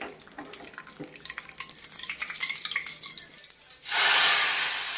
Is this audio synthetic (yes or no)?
no